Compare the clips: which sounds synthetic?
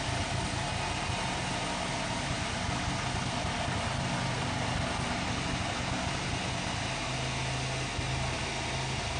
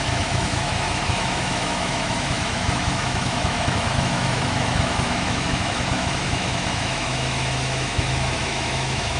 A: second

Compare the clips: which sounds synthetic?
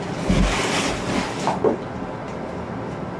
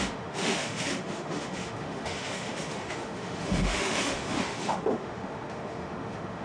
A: second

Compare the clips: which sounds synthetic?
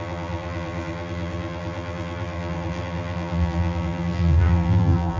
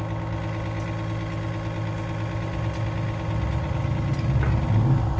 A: first